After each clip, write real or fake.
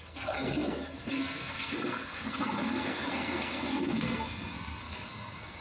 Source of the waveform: fake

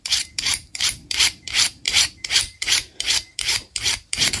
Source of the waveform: fake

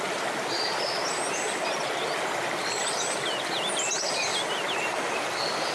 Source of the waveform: fake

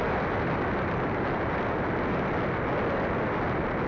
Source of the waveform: real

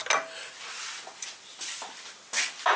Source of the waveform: real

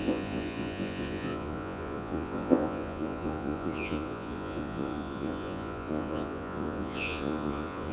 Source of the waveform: fake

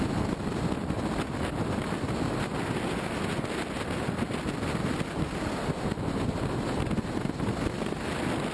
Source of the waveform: real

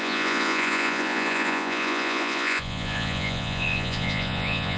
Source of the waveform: fake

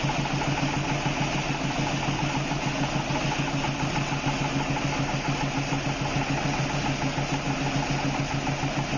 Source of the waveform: real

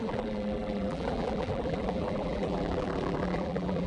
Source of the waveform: fake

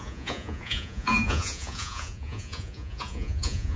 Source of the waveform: fake